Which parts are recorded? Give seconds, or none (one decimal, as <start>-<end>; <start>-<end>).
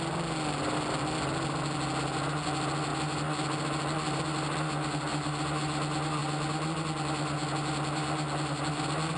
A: 0.0-9.2